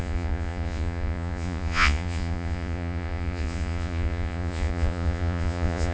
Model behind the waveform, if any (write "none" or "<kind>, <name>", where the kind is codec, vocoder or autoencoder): vocoder, Vocos